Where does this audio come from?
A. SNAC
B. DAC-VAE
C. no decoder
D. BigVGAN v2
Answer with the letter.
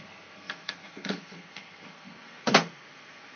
A